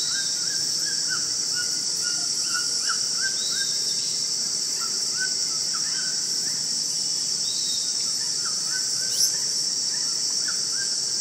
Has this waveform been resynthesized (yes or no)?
yes